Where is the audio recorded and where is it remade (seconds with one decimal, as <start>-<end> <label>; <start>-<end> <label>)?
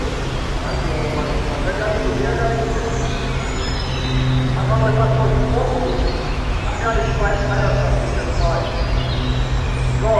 0.0-4.6 recorded; 4.6-7.0 remade; 7.0-10.2 recorded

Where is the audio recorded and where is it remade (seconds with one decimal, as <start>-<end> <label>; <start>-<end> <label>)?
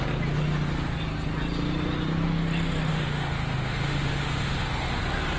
0.0-2.9 recorded; 2.9-5.0 remade; 5.0-5.4 recorded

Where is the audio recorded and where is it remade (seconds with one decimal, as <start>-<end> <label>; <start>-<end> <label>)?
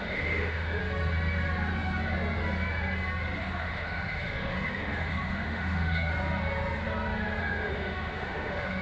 0.0-0.8 remade; 0.8-3.4 recorded; 3.4-6.1 remade; 6.1-7.4 recorded; 7.4-8.8 remade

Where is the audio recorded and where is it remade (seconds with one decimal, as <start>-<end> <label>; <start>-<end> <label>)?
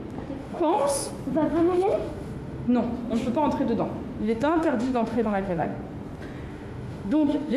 0.0-0.4 recorded; 0.4-1.1 remade; 1.1-1.5 recorded; 1.5-2.7 remade; 2.7-4.2 recorded; 4.2-5.8 remade; 5.8-6.5 recorded; 6.5-7.6 remade